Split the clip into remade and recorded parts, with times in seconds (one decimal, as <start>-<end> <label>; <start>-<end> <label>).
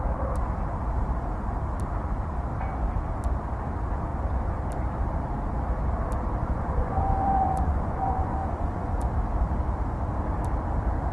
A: 0.0-6.4 recorded; 6.4-9.1 remade; 9.1-11.1 recorded